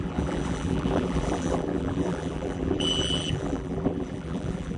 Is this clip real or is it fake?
fake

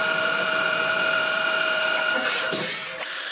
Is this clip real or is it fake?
fake